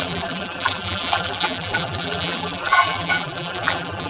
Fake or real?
fake